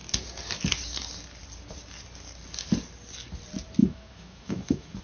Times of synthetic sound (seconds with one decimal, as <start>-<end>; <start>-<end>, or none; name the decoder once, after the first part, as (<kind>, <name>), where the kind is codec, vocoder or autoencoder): 3.8-5.0 (autoencoder, DAC-VAE)